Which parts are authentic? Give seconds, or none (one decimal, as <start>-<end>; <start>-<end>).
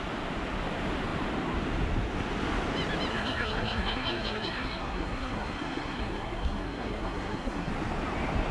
0.0-3.1; 7.7-8.5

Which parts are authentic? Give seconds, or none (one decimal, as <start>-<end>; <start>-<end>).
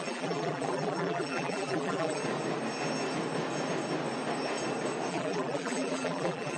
2.2-5.1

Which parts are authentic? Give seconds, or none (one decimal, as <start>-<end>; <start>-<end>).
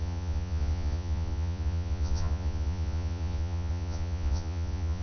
none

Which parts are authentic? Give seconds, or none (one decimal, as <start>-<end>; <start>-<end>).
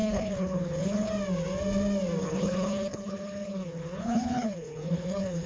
1.1-2.2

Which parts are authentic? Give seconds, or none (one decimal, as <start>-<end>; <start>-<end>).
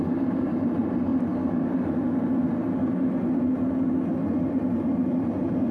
1.1-4.5